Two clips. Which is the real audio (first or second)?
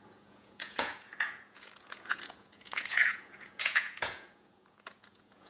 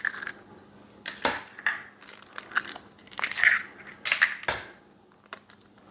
second